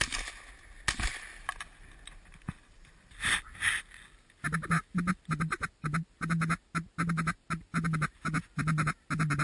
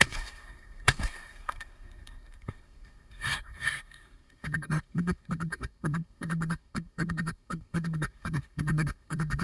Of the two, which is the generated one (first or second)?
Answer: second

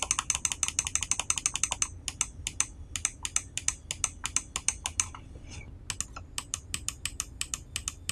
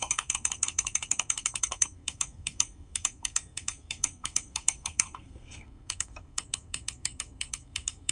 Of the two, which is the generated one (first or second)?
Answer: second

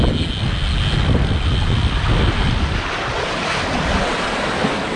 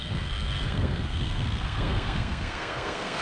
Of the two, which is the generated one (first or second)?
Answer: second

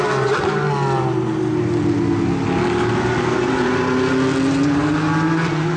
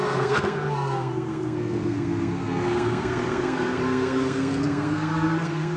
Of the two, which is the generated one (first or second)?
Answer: second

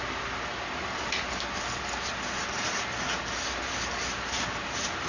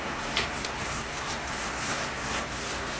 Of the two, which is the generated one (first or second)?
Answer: second